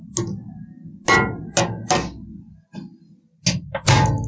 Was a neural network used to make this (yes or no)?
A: no